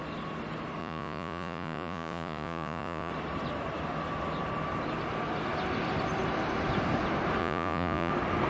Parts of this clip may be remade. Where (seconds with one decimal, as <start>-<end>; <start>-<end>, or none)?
0.8-3.1; 7.4-8.1